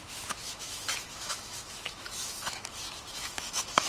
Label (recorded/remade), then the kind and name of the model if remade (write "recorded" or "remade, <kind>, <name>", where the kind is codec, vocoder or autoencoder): remade, autoencoder, DAC-VAE